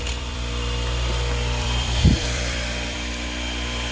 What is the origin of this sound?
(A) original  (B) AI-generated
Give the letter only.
B